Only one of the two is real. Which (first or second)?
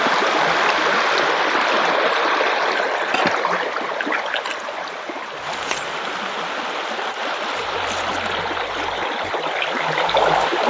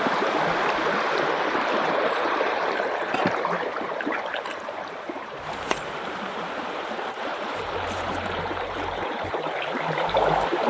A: first